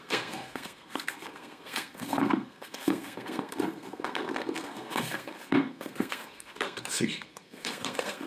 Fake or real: fake